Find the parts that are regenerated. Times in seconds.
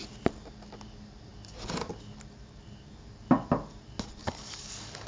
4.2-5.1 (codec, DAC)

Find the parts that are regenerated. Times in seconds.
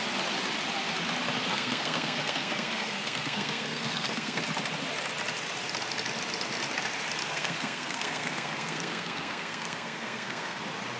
1.5-4.4 (codec, SNAC); 7.2-10.6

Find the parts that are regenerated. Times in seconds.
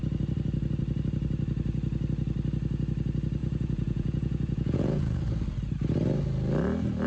3.4-5.2 (vocoder, Vocos)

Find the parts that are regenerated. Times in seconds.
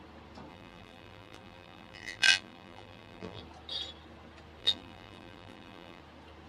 0.5-3.4 (vocoder, BigVGAN v2); 4.6-6.0